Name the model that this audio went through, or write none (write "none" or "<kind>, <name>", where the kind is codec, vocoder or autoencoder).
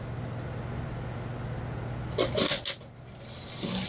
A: none